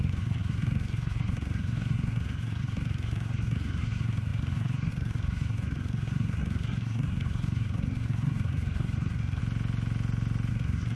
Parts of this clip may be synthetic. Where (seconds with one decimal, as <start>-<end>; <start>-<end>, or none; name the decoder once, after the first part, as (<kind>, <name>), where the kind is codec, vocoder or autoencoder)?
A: 0.0-9.4 (codec, SNAC); 10.5-11.0